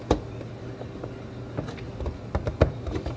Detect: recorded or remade recorded